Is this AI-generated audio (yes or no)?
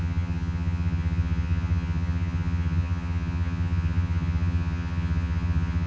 yes